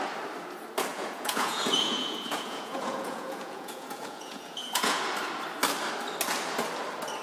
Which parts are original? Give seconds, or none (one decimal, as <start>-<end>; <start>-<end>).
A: 0.0-0.9; 5.0-7.2